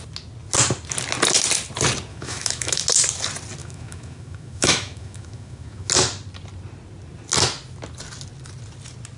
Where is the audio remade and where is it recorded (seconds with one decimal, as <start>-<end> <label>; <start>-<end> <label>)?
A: 0.0-2.1 recorded; 2.1-2.8 remade; 2.8-3.6 recorded; 3.6-5.9 remade; 5.9-9.2 recorded